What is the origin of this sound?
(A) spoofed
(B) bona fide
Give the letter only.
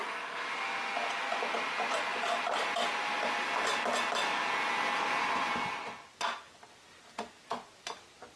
B